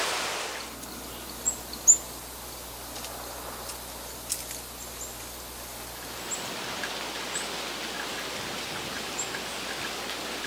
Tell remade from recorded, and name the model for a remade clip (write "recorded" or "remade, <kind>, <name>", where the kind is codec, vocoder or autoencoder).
recorded